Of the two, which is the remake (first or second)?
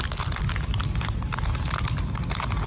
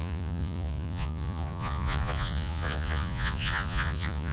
second